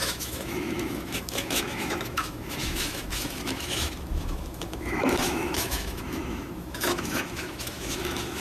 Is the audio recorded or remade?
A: remade